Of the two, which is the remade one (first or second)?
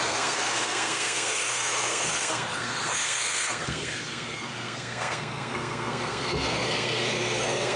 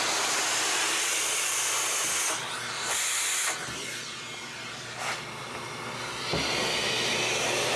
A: first